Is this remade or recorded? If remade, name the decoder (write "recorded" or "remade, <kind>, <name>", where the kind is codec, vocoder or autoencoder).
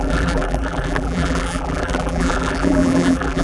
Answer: remade, vocoder, BigVGAN v2